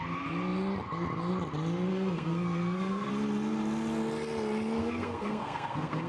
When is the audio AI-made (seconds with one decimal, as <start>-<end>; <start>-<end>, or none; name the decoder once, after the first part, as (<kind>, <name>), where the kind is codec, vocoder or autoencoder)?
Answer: 1.9-3.1 (codec, SNAC); 4.8-6.1